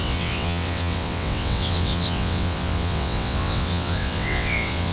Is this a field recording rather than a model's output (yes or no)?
no